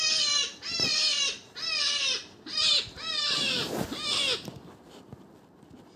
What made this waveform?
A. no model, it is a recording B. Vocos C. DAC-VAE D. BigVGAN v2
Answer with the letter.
D